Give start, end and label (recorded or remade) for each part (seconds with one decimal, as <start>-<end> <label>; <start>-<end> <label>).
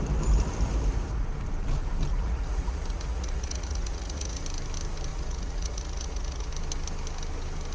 0.0-2.1 recorded; 2.1-4.4 remade; 4.4-5.1 recorded; 5.1-6.5 remade; 6.5-7.7 recorded